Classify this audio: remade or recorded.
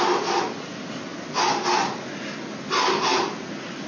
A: recorded